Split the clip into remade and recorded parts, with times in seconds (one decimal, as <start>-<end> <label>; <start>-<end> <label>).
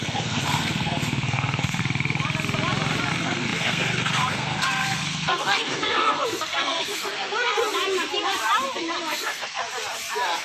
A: 0.0-1.8 remade; 1.8-3.1 recorded; 3.1-7.6 remade; 7.6-9.0 recorded; 9.0-9.6 remade; 9.6-10.4 recorded